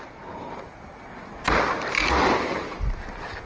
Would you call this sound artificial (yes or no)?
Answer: no